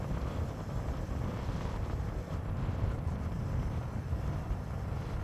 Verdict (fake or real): fake